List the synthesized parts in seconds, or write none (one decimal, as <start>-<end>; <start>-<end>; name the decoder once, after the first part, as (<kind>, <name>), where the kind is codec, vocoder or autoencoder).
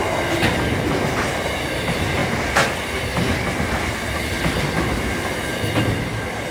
none